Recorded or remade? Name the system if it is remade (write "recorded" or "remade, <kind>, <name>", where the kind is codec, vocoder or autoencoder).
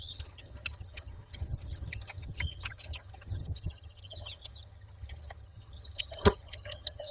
remade, vocoder, HiFi-GAN